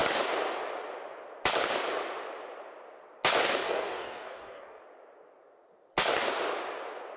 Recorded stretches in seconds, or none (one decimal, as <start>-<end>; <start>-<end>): 0.0-3.6; 4.8-7.2